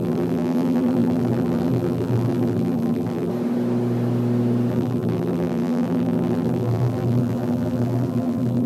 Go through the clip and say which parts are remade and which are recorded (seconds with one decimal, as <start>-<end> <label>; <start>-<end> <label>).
0.0-3.3 remade; 3.3-4.7 recorded; 4.7-8.7 remade

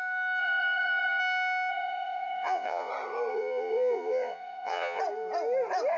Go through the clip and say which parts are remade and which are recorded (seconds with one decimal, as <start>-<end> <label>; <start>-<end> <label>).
0.0-0.4 recorded; 0.4-1.2 remade; 1.2-1.7 recorded; 1.7-2.9 remade; 2.9-3.3 recorded; 3.3-5.0 remade; 5.0-6.0 recorded

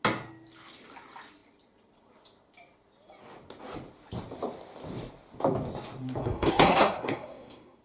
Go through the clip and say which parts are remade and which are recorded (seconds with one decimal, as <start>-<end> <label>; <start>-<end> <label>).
0.0-6.2 recorded; 6.2-7.8 remade

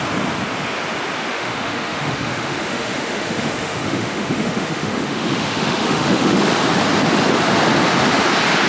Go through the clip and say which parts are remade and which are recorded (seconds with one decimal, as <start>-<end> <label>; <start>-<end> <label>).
0.0-1.3 recorded; 1.3-6.4 remade; 6.4-8.7 recorded

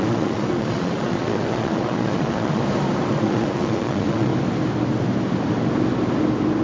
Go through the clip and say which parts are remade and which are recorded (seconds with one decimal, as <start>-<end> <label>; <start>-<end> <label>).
0.0-2.6 remade; 2.6-3.1 recorded; 3.1-4.3 remade; 4.3-6.6 recorded

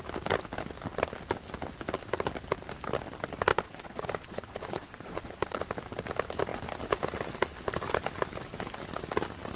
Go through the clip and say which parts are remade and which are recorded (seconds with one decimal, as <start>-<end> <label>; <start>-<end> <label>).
0.0-3.5 recorded; 3.5-5.6 remade; 5.6-9.6 recorded

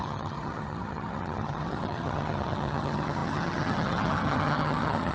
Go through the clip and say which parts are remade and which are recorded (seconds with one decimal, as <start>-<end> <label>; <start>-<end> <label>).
0.0-5.1 remade